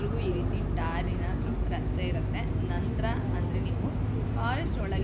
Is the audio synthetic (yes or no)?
no